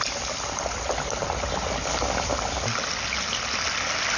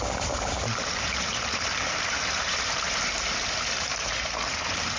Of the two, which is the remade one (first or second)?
second